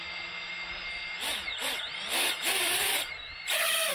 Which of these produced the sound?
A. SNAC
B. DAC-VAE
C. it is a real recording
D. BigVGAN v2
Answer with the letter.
C